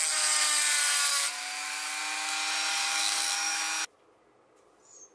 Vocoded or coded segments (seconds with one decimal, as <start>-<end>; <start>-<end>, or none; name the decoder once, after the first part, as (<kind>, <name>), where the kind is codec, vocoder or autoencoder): 1.1-2.0 (codec, DAC); 2.7-3.6